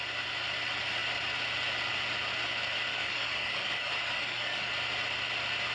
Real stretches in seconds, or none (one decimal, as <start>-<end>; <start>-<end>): 0.0-2.9; 4.7-5.7